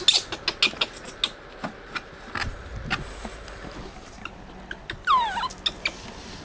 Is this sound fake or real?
real